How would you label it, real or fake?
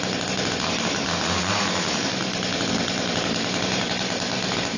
real